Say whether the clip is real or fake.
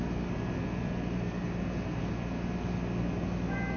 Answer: real